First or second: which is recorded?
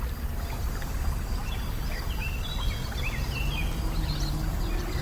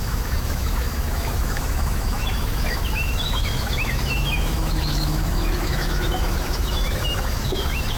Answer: first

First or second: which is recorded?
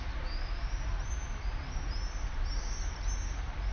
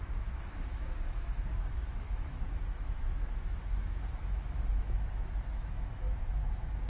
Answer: first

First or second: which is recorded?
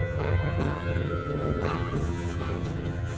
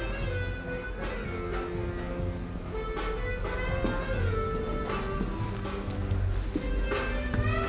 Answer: second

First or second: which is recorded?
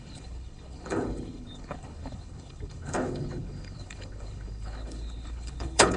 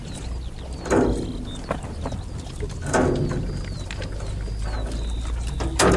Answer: second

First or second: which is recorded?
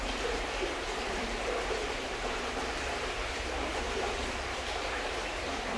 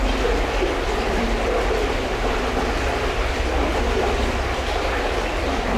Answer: second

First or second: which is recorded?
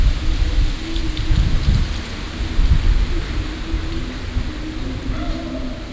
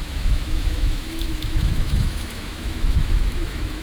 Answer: first